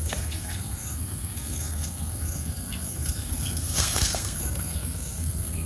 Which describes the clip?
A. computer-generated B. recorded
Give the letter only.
A